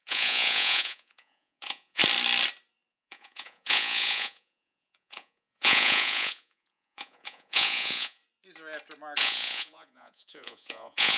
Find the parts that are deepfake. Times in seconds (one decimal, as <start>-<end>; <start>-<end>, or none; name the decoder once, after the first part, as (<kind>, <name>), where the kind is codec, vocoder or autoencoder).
0.0-2.0 (vocoder, Vocos); 2.9-8.2; 9.2-11.2